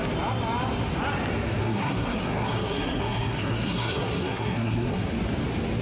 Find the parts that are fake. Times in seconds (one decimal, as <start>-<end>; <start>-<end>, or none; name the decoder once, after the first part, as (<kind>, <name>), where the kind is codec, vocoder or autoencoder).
1.6-5.1 (codec, SNAC)